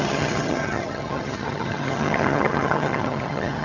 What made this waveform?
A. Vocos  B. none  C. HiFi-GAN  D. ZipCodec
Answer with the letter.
C